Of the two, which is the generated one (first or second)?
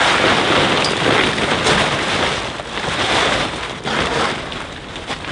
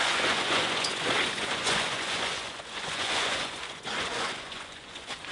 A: second